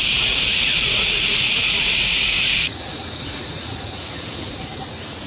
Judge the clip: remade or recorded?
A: remade